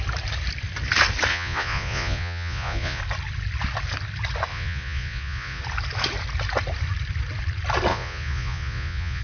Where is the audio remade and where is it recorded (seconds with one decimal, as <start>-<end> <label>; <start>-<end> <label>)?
0.0-1.3 recorded; 1.3-3.0 remade; 3.0-4.5 recorded; 4.5-5.6 remade; 5.6-7.9 recorded; 7.9-9.2 remade